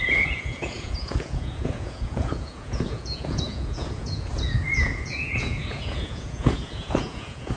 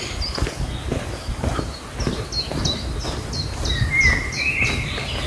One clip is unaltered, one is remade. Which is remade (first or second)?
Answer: first